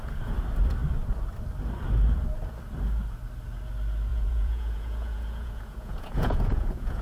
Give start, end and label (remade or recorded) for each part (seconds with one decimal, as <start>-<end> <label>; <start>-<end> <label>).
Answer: 0.0-4.1 recorded; 4.1-7.0 remade